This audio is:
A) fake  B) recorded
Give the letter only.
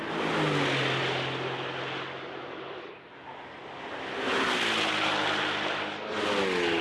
B